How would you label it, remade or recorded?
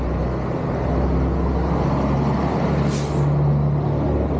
recorded